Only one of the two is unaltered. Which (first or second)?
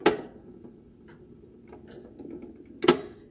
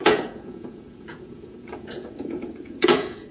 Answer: first